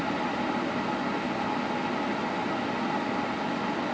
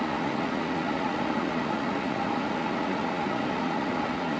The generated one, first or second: second